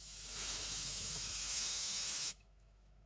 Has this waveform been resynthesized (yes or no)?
yes